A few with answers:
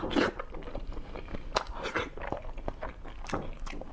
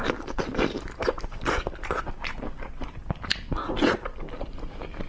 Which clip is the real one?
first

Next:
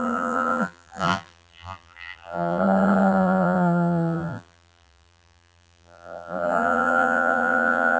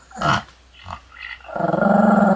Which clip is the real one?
second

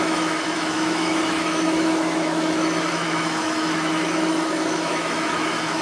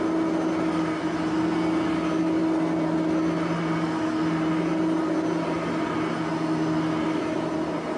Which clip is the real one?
second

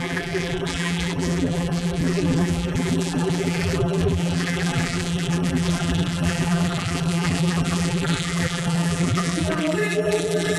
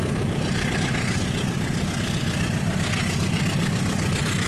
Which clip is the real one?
second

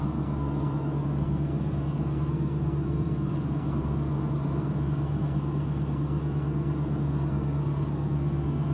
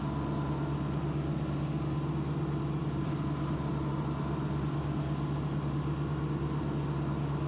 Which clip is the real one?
second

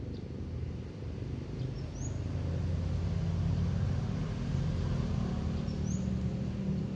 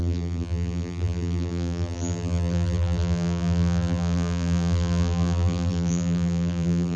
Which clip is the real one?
first